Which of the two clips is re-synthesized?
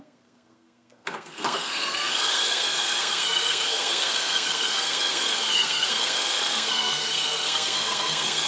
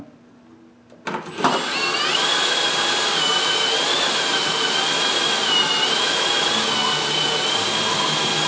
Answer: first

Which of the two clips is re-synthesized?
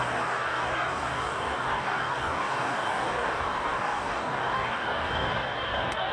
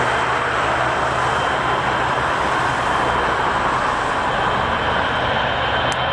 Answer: first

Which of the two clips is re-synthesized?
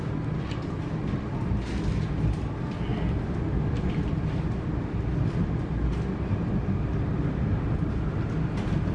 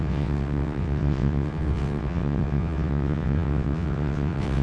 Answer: second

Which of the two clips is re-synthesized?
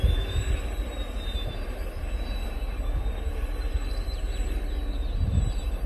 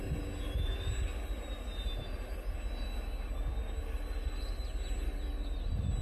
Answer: first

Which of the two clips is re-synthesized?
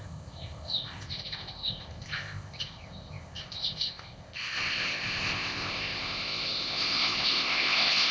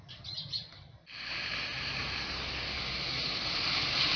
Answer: first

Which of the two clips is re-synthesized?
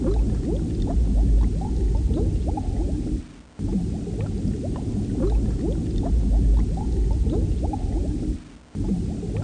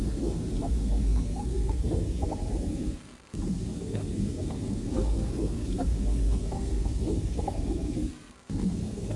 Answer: second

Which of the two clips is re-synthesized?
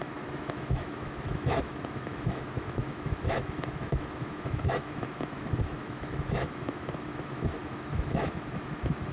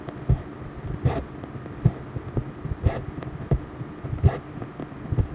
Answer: first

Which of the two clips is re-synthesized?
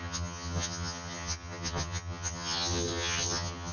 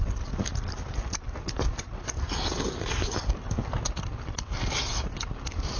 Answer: first